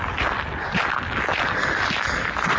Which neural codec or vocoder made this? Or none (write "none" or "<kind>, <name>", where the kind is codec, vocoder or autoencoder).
none